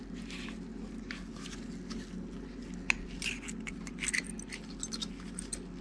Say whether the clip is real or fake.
real